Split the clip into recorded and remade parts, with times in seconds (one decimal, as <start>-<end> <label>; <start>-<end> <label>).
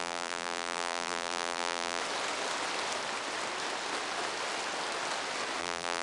0.0-2.0 remade; 2.0-5.6 recorded; 5.6-6.0 remade